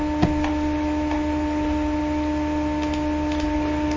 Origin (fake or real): real